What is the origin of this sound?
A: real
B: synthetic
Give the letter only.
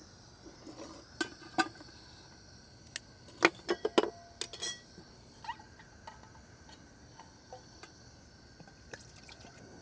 A